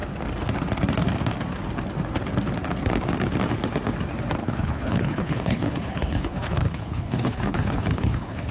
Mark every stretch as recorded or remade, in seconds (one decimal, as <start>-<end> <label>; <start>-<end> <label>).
0.0-4.4 recorded; 4.4-8.5 remade